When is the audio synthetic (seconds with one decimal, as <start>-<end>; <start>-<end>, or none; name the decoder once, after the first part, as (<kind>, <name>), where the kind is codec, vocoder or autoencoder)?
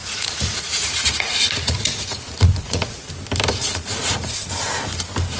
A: 0.0-3.1 (vocoder, Vocos); 3.6-4.5